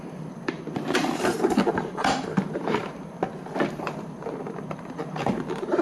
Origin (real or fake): fake